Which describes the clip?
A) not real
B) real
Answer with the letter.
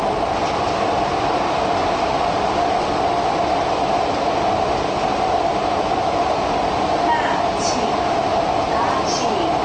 B